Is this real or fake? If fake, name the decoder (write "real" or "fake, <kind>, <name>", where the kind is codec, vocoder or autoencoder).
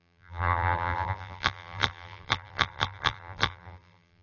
fake, vocoder, BigVGAN v2